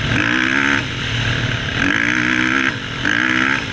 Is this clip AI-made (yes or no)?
no